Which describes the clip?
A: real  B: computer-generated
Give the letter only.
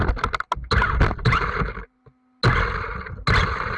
A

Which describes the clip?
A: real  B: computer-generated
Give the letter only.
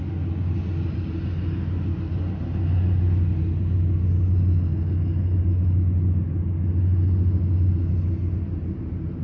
A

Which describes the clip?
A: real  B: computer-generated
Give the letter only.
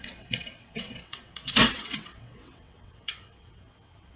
B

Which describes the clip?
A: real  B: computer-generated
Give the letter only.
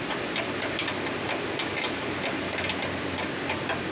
A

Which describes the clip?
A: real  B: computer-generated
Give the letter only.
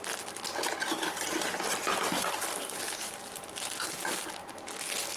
A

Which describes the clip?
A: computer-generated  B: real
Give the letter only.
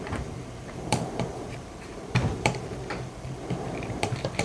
A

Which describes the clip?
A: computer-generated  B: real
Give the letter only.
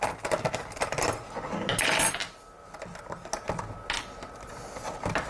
B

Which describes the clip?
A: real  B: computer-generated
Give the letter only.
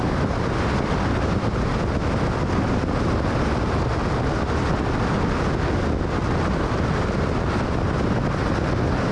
A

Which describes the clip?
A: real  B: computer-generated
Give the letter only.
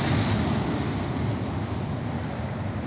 A